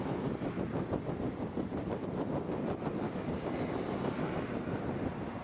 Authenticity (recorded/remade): recorded